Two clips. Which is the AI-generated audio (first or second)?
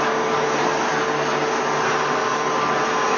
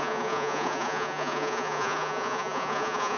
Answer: second